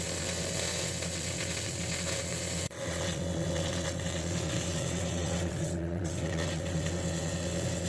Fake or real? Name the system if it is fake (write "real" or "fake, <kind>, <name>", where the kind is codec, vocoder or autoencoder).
fake, vocoder, WaveNeXt